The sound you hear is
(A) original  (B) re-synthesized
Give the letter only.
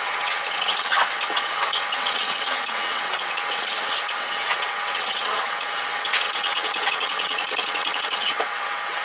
B